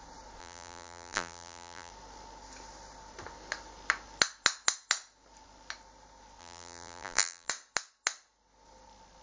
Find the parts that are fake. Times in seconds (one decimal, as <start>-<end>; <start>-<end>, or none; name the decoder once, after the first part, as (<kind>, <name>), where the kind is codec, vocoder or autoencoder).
0.4-1.9 (vocoder, BigVGAN v2); 6.4-7.5